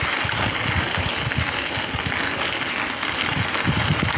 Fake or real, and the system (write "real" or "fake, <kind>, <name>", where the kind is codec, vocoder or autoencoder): real